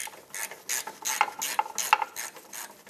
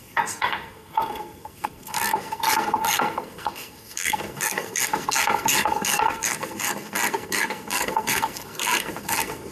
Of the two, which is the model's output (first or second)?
second